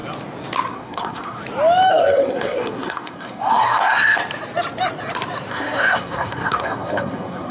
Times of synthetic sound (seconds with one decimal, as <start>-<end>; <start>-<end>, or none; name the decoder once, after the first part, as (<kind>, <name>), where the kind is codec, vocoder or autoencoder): 0.7-1.4 (codec, SNAC); 1.9-4.2; 5.5-7.5